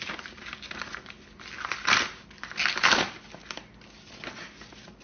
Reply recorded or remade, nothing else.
recorded